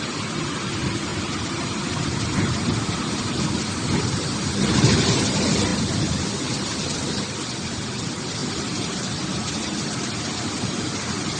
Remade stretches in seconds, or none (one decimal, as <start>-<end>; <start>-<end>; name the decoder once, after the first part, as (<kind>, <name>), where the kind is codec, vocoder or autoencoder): none